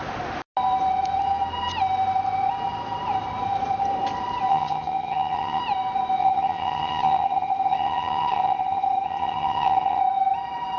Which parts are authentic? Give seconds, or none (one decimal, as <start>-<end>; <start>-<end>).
0.0-4.5; 5.6-6.2; 10.0-10.8